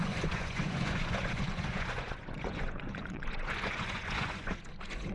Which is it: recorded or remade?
remade